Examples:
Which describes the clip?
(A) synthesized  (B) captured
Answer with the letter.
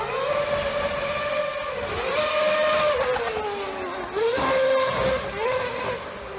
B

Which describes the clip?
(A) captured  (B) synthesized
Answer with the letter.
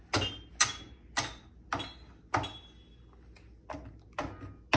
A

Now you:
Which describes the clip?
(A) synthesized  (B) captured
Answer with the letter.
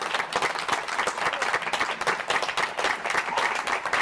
B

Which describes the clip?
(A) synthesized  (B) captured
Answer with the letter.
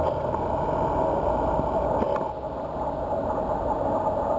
B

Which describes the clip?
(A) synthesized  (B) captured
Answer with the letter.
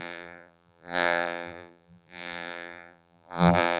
A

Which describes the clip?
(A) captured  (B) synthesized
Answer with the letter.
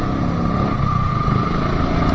A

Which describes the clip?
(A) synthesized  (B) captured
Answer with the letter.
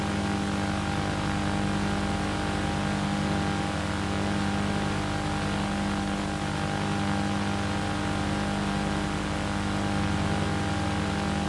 B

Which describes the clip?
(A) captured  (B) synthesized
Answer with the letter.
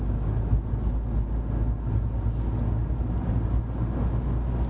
A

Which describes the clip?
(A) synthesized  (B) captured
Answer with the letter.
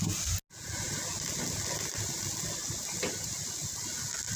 B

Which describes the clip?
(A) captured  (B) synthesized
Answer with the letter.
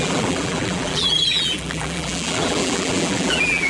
B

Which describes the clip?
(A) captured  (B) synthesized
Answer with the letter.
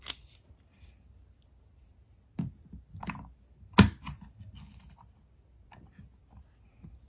A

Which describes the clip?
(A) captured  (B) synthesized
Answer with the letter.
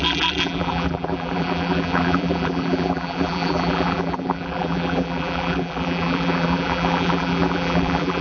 B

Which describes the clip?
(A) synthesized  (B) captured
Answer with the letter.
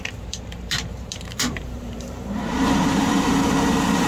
A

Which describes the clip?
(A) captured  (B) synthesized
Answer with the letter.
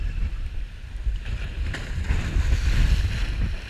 A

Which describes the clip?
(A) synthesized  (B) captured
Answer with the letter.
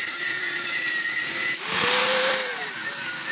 A